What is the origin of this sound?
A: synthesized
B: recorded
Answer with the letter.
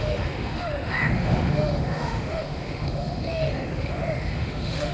A